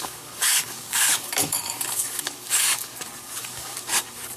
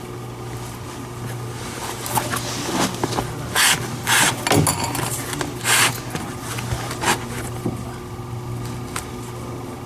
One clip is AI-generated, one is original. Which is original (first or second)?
second